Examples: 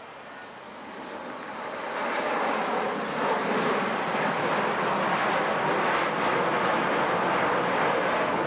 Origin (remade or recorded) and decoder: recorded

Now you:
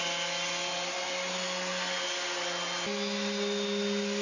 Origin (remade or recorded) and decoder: recorded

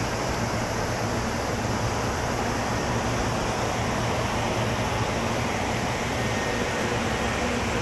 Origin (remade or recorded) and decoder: recorded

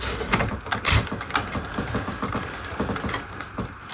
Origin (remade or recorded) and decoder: recorded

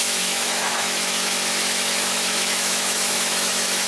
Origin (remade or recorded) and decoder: remade, autoencoder, DAC-VAE